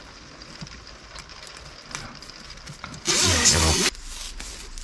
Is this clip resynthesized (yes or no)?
no